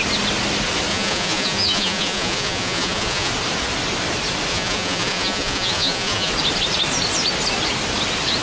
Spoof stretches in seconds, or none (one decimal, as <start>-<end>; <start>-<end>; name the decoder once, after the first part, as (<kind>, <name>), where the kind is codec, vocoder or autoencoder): 0.9-3.3 (vocoder, Vocos); 4.5-6.3